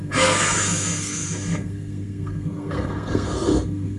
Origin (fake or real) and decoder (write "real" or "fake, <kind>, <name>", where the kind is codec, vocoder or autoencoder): fake, codec, SNAC